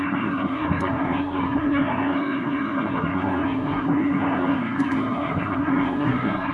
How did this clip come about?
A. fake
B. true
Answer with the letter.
A